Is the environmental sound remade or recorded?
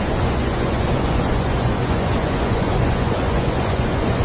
remade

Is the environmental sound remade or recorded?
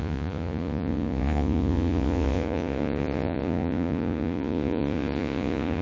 remade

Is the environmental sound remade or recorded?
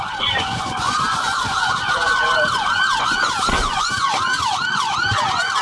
remade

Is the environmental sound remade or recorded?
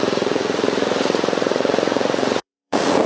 remade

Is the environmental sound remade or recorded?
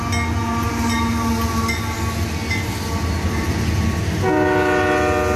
recorded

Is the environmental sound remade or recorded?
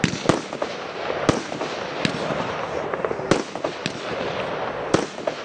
recorded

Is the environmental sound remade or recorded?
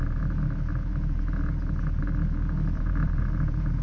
remade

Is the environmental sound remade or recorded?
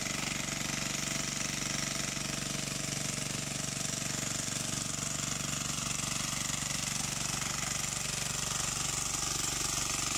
recorded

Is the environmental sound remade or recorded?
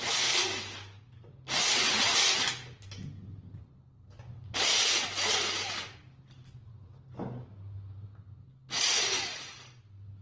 recorded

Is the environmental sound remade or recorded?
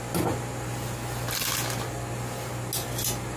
recorded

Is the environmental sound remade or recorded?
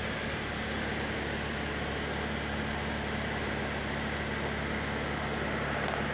recorded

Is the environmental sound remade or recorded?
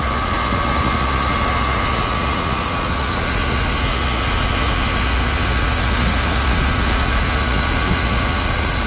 remade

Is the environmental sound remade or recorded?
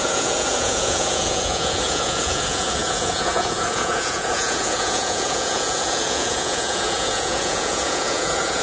remade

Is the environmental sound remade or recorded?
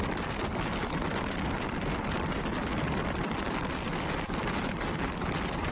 recorded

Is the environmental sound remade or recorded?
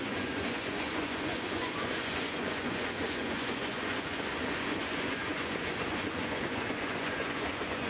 remade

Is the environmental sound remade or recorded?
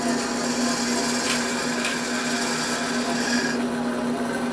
recorded